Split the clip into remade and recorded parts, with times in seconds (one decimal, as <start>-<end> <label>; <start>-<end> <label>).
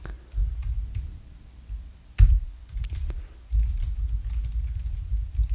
0.0-5.5 recorded